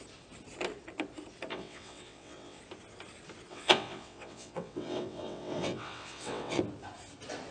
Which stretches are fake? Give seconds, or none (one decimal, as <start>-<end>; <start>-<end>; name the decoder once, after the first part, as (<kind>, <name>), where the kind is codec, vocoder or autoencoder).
1.5-2.6 (vocoder, WaveNeXt); 3.5-6.6